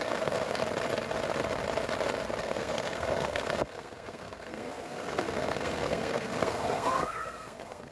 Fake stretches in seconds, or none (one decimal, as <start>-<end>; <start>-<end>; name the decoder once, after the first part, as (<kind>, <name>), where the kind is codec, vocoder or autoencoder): 0.0-0.6 (codec, SNAC); 2.4-7.9